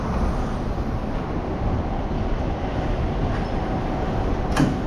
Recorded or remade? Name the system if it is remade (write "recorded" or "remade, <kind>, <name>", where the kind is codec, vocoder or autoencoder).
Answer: recorded